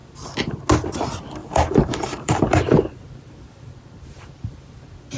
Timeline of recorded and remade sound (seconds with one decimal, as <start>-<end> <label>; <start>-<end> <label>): 0.0-1.4 recorded; 1.4-2.6 remade; 2.6-5.2 recorded